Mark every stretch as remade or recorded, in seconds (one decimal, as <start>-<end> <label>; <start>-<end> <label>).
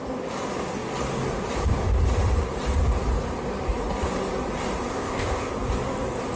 0.0-4.9 recorded; 4.9-5.5 remade; 5.5-6.4 recorded